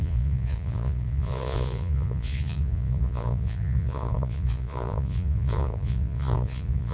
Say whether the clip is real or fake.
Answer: fake